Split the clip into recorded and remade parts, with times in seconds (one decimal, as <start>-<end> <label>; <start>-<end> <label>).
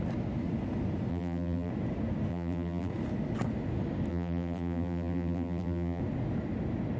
0.0-1.1 recorded; 1.1-1.7 remade; 1.7-2.3 recorded; 2.3-2.9 remade; 2.9-4.1 recorded; 4.1-6.0 remade; 6.0-7.0 recorded